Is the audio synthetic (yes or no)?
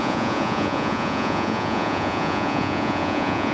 yes